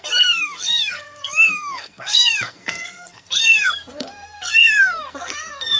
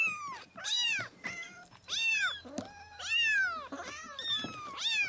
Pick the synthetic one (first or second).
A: first